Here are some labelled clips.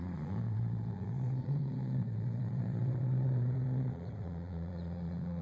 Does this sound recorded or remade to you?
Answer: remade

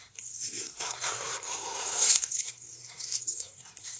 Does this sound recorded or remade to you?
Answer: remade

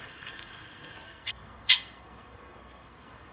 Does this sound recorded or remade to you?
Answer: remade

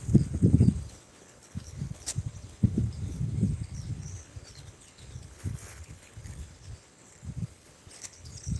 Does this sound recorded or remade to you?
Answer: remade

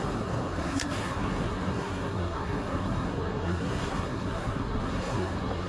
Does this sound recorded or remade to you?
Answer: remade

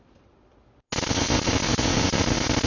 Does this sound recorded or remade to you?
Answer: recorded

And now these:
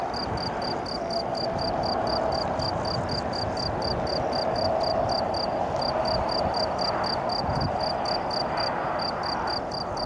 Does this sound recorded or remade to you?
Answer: recorded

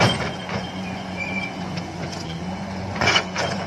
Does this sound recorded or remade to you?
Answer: remade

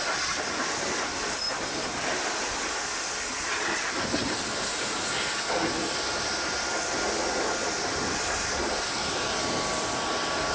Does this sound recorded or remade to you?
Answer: recorded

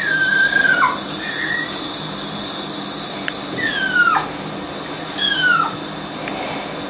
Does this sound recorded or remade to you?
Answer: recorded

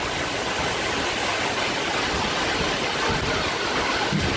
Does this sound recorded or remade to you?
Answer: recorded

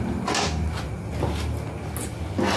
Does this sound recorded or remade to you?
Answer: recorded